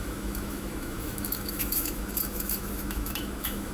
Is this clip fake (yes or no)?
yes